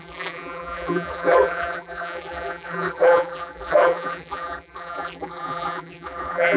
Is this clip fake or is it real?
fake